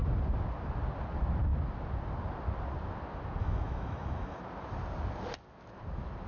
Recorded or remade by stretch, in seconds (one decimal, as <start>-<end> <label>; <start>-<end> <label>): 0.0-3.4 recorded; 3.4-4.4 remade; 4.4-6.3 recorded